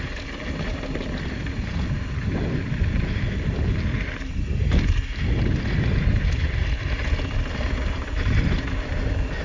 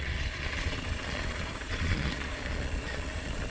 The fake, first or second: second